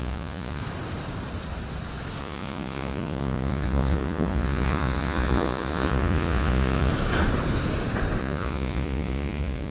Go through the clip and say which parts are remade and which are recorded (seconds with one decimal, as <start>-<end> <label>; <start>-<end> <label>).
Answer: 0.0-0.6 remade; 0.6-2.2 recorded; 2.2-6.9 remade; 6.9-8.2 recorded; 8.2-9.7 remade

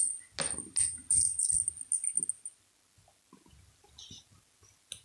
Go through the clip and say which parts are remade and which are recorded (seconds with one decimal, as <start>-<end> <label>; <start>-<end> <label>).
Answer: 0.0-5.0 recorded

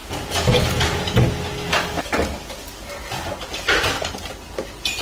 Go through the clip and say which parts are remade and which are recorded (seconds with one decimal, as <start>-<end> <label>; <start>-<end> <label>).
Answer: 0.0-1.1 remade; 1.1-5.0 recorded

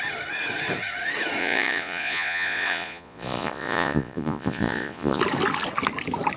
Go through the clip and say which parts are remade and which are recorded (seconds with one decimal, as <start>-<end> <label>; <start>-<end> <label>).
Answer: 0.0-1.4 recorded; 1.4-5.2 remade; 5.2-6.4 recorded